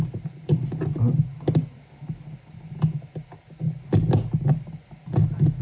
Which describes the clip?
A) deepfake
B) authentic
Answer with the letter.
B